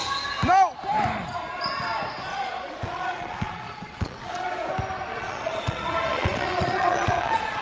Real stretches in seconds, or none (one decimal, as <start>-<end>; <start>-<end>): 0.0-2.3; 4.5-5.1

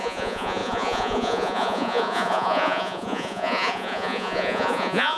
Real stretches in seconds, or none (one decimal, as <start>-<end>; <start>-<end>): none

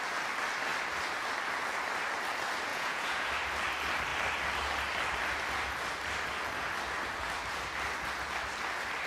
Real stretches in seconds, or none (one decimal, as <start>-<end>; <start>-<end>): 0.0-2.7; 3.3-9.1